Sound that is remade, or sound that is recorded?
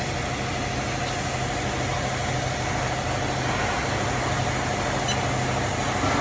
recorded